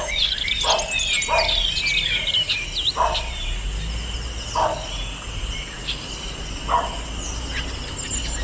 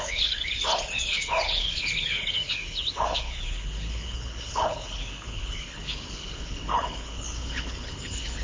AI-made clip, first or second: second